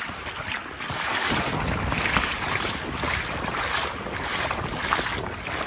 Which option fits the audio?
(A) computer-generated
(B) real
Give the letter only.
B